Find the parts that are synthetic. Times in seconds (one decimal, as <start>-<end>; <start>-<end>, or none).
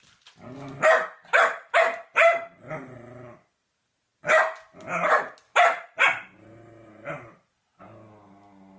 none